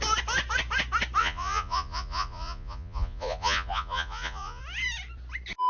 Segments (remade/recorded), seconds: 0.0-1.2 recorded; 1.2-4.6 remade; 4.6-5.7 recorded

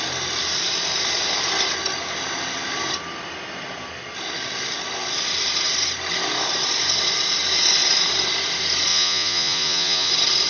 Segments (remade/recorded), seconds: 0.0-8.9 recorded; 8.9-10.1 remade; 10.1-10.5 recorded

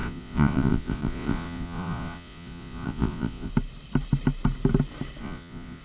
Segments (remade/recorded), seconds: 0.0-3.5 remade; 3.5-5.2 recorded; 5.2-5.8 remade

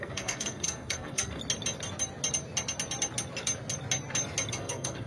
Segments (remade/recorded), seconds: 0.0-1.4 remade; 1.4-4.5 recorded; 4.5-5.1 remade

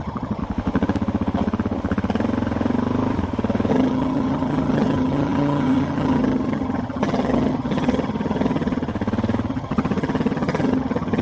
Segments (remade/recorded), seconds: 0.0-0.4 remade; 0.4-3.7 recorded; 3.7-8.9 remade; 8.9-9.5 recorded; 9.5-11.2 remade